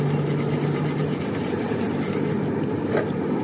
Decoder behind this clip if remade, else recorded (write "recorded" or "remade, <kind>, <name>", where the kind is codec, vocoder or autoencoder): recorded